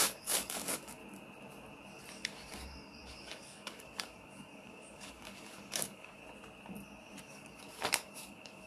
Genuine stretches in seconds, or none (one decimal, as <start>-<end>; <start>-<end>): 1.0-2.1; 6.2-7.2